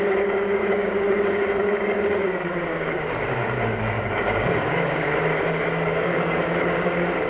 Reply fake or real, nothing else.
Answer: fake